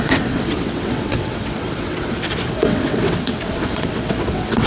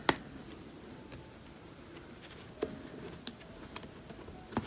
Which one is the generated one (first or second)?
first